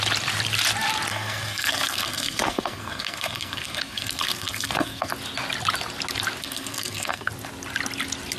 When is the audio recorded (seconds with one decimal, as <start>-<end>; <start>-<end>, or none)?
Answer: 0.0-1.1; 5.1-6.4; 7.3-8.4